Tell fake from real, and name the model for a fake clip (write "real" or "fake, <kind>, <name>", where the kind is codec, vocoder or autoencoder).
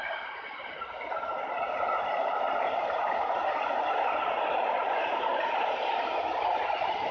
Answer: real